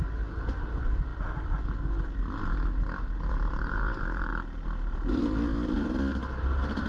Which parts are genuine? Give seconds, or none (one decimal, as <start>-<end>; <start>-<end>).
1.1-3.3; 4.3-6.4